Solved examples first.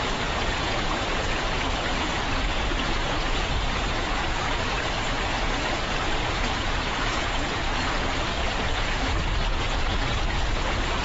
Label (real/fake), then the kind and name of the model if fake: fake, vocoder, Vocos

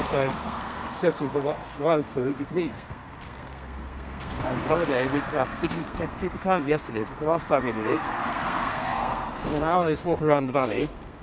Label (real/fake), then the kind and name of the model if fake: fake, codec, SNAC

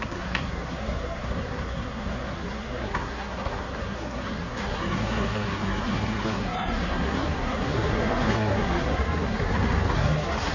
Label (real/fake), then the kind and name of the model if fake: fake, codec, SNAC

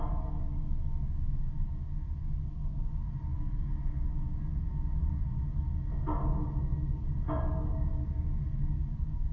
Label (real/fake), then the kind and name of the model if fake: real